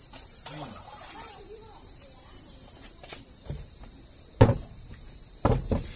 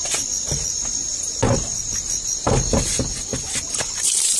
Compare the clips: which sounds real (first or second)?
second